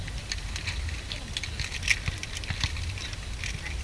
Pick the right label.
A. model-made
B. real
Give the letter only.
B